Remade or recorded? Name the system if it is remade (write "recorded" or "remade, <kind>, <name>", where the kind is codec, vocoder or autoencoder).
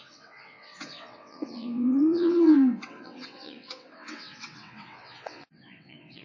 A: remade, vocoder, WaveNeXt